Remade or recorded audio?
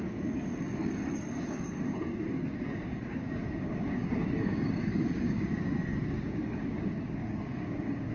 remade